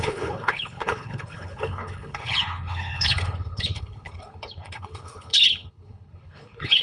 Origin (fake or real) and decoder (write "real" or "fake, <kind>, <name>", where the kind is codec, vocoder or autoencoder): fake, codec, HILCodec